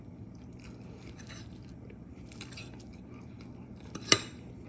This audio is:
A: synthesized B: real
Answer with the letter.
A